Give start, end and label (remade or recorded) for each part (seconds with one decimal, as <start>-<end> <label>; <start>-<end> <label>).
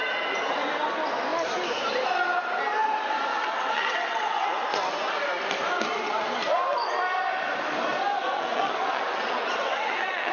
0.0-3.3 recorded; 3.3-4.6 remade; 4.6-8.2 recorded; 8.2-10.3 remade